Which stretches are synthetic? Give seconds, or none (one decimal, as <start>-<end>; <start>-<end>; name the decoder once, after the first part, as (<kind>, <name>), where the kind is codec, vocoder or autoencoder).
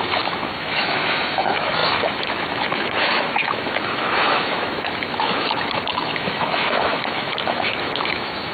0.0-8.5 (autoencoder, DAC-VAE)